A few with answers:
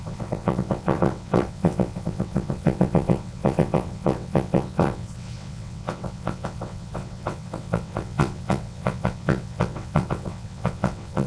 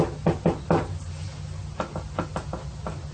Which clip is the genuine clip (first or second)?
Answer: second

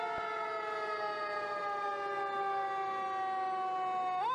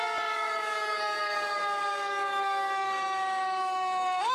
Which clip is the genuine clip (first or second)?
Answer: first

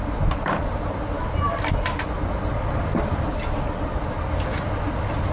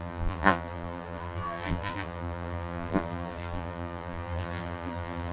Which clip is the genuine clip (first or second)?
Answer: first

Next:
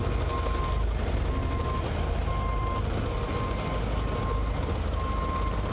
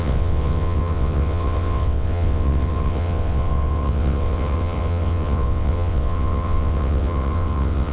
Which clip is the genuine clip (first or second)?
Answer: first